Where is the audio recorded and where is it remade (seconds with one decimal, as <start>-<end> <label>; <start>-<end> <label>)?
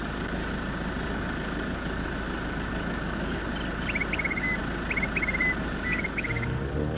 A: 0.0-0.4 remade; 0.4-1.1 recorded; 1.1-3.4 remade; 3.4-4.1 recorded; 4.1-4.6 remade; 4.6-5.6 recorded; 5.6-7.0 remade